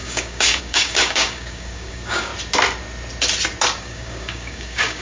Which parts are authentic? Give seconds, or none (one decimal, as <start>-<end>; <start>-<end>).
2.3-3.8

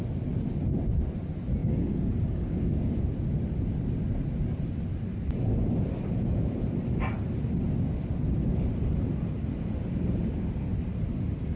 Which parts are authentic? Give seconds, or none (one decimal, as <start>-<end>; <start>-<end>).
0.0-1.6; 3.0-11.6

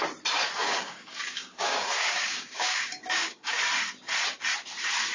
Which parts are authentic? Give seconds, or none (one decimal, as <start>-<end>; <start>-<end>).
0.0-0.6; 3.6-5.1

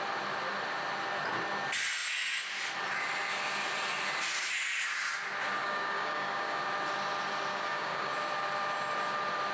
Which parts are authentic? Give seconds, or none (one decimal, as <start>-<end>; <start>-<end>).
0.0-5.6; 6.6-7.5; 8.1-9.5

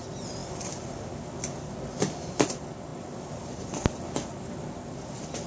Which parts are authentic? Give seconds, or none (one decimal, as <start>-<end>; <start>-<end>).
0.0-5.5

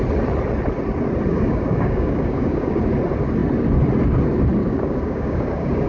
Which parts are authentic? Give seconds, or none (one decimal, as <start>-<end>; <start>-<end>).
0.0-1.3; 2.9-4.6